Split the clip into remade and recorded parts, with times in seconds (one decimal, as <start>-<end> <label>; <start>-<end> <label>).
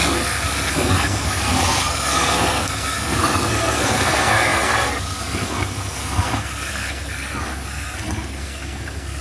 0.0-9.2 remade